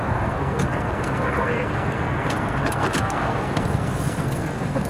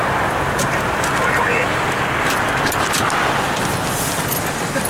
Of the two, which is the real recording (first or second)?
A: second